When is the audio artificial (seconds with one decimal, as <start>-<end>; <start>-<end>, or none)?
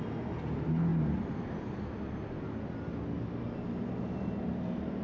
none